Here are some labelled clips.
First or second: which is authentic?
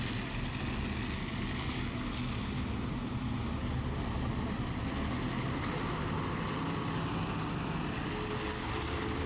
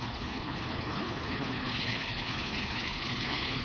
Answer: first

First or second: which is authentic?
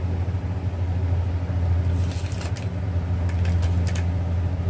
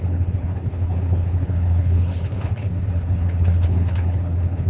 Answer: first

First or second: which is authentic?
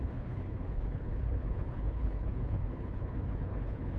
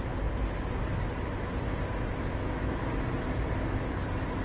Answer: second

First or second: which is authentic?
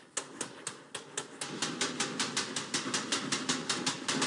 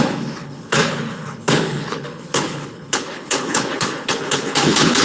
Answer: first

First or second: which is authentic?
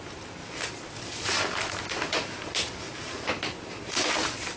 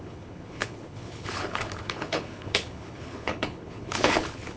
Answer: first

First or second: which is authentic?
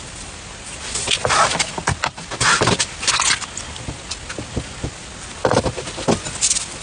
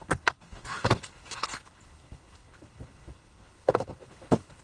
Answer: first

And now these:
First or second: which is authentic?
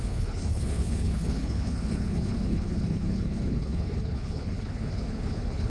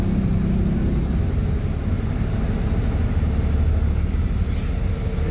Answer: second